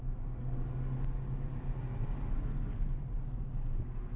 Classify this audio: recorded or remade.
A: recorded